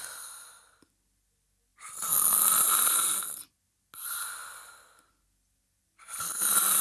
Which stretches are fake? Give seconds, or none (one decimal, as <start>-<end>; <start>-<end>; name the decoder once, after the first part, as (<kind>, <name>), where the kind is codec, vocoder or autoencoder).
none

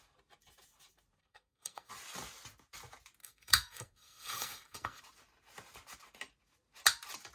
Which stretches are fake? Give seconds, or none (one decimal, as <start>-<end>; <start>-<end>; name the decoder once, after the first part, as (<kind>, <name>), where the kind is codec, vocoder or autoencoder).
1.2-1.9 (codec, SNAC); 3.2-5.0

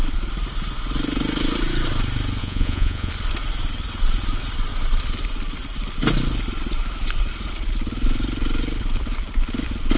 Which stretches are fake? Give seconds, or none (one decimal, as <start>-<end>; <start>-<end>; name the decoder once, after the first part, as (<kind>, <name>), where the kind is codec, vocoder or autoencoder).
2.4-3.1 (vocoder, Vocos)

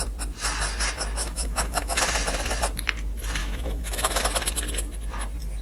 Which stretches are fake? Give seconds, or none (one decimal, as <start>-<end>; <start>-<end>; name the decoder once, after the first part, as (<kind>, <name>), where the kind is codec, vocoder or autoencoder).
1.2-2.0 (autoencoder, DAC-VAE); 3.4-4.2